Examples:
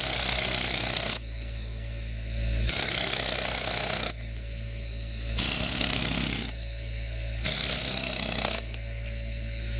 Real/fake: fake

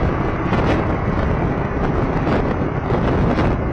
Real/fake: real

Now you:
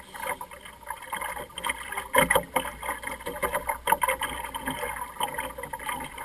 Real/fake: real